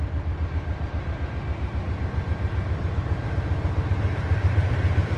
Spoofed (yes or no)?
yes